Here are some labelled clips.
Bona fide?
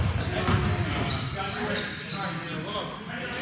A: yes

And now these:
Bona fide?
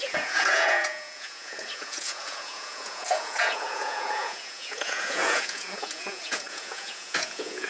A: no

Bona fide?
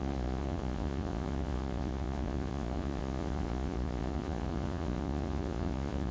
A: no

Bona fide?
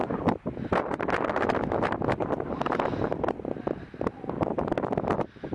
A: yes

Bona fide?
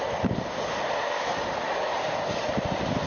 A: yes